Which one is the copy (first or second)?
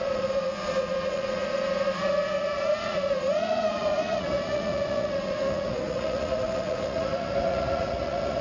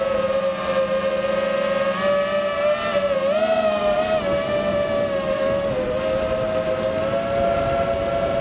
first